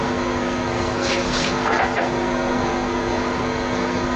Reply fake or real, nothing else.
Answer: fake